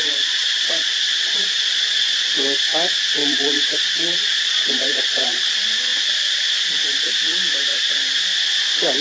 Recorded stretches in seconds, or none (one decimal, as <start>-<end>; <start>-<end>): 2.3-3.2; 5.4-9.0